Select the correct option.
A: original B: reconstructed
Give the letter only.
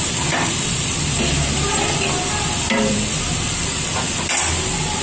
A